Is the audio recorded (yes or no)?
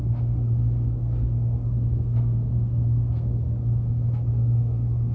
no